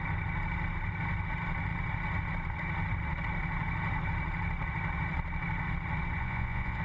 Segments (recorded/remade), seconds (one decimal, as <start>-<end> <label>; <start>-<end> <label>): 0.0-6.2 recorded; 6.2-6.8 remade